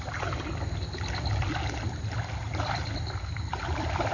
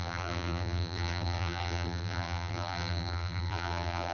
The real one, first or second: first